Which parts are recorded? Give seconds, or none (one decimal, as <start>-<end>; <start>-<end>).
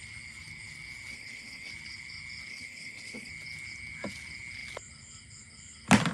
0.0-1.1; 1.7-2.5; 3.3-6.1